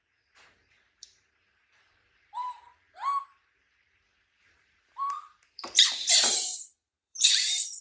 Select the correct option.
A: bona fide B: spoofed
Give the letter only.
B